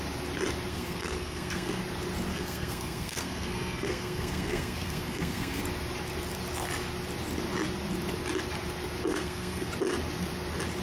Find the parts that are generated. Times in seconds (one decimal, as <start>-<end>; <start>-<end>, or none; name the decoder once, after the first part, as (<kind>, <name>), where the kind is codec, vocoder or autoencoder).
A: 0.7-1.8 (codec, SNAC); 2.3-5.6; 9.1-9.7